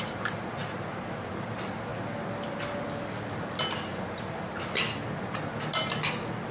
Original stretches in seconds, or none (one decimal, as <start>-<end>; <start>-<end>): 0.0-6.5